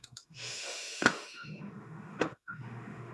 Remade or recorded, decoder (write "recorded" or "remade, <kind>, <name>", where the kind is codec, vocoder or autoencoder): remade, autoencoder, DAC-VAE